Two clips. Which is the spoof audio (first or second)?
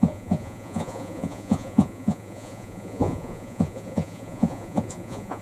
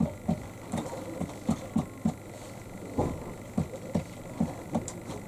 first